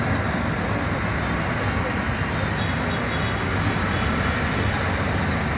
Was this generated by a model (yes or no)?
no